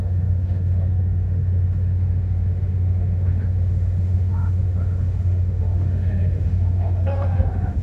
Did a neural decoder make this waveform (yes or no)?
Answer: yes